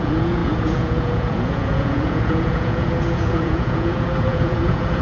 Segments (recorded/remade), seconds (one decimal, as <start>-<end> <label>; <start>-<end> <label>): 0.0-5.0 remade